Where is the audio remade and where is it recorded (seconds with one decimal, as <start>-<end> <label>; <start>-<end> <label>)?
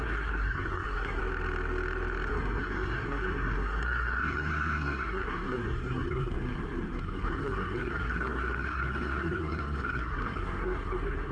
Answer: 0.0-1.2 remade; 1.2-2.3 recorded; 2.3-11.3 remade